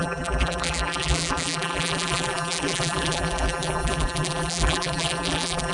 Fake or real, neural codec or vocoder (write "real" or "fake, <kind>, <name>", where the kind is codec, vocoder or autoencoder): fake, vocoder, BigVGAN v2